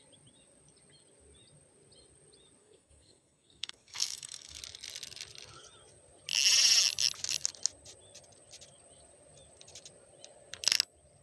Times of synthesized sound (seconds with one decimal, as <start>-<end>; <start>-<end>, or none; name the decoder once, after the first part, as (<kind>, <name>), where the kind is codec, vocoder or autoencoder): 2.6-4.6 (codec, SNAC)